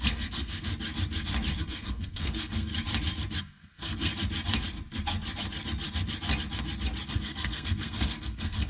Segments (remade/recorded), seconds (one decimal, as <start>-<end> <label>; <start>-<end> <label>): 0.0-0.7 remade; 0.7-1.6 recorded; 1.6-2.7 remade; 2.7-3.4 recorded; 3.4-4.1 remade; 4.1-7.1 recorded; 7.1-8.7 remade